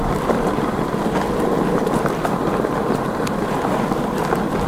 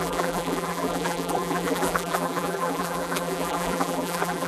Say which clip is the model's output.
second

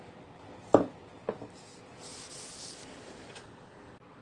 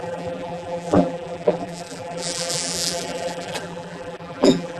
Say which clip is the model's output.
second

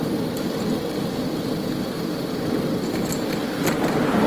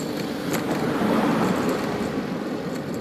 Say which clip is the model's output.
second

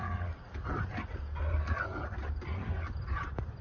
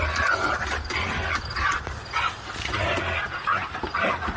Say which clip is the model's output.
first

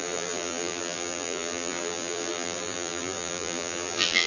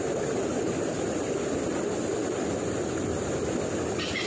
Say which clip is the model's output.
first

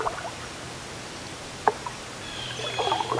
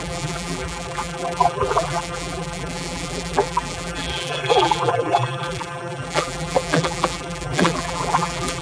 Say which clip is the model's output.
second